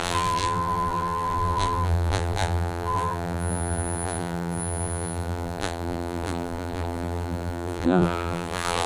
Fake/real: fake